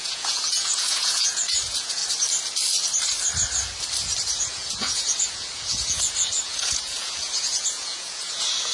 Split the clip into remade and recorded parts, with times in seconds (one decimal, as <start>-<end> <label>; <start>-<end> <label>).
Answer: 0.0-2.0 remade; 2.0-4.5 recorded; 4.5-8.7 remade